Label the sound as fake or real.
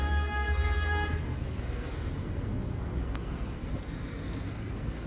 fake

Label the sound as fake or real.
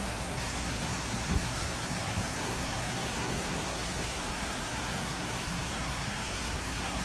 fake